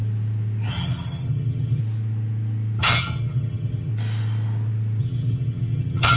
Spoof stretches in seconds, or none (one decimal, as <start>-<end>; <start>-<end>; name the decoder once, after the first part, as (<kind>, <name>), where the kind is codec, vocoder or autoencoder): 0.7-1.8 (vocoder, HiFi-GAN); 2.8-3.9; 5.0-6.2